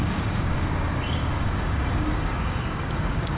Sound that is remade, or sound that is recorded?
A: remade